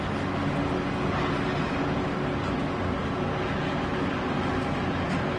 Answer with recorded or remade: recorded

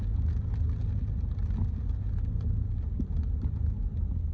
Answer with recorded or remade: recorded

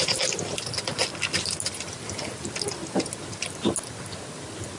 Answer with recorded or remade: recorded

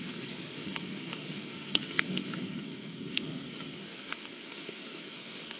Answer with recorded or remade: remade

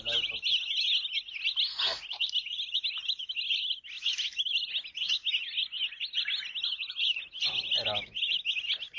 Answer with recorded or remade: recorded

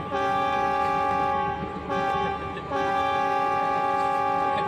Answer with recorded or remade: recorded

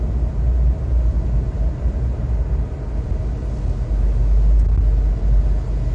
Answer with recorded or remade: recorded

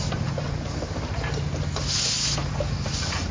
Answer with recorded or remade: recorded